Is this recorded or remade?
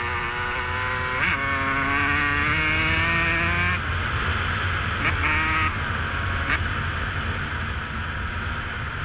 recorded